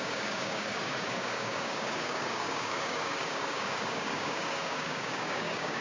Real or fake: fake